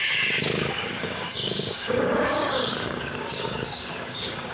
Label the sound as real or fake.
fake